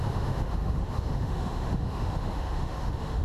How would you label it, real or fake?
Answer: fake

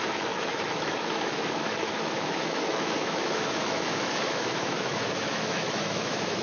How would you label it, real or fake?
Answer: fake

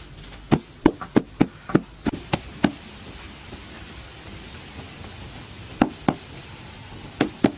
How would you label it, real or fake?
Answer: real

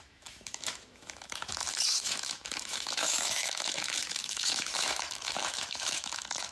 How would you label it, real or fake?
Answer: fake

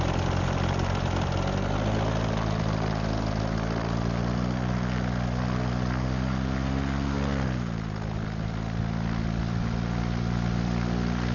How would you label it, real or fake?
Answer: real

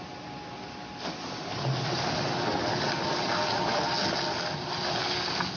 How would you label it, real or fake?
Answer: real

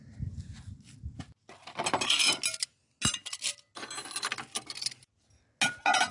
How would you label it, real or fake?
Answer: real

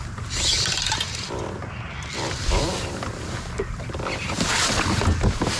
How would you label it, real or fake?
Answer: real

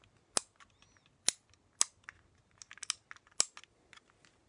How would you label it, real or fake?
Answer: real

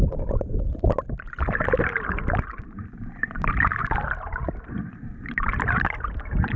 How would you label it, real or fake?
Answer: real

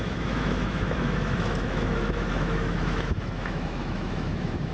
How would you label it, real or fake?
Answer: fake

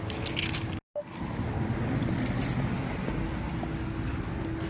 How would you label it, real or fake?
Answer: real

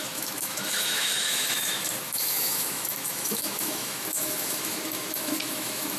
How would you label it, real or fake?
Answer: fake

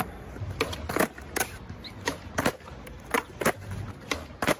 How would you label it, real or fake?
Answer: real